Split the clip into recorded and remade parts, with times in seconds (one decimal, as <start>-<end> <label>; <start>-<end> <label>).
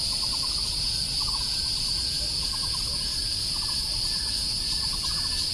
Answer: 0.0-3.1 recorded; 3.1-3.7 remade; 3.7-5.5 recorded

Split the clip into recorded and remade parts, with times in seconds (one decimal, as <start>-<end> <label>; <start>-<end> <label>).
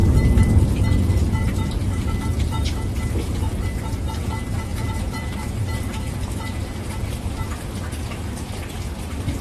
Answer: 0.0-1.2 recorded; 1.2-2.1 remade; 2.1-4.7 recorded; 4.7-6.3 remade; 6.3-9.4 recorded